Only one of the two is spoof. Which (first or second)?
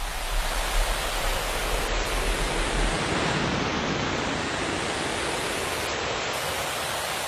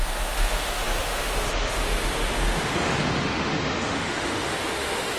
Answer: second